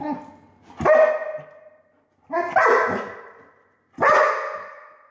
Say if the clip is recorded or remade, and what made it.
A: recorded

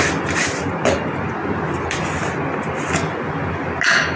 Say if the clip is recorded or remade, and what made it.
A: recorded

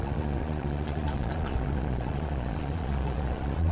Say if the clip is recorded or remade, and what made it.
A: remade, vocoder, Vocos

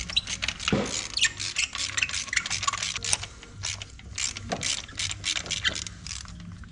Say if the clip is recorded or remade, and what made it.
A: recorded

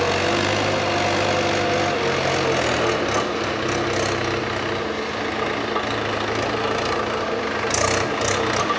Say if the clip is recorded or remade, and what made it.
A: recorded